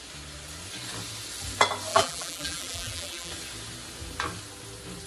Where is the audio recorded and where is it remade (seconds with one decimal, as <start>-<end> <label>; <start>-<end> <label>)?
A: 0.0-1.9 recorded; 1.9-3.3 remade; 3.3-5.1 recorded